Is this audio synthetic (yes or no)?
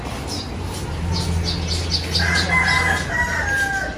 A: no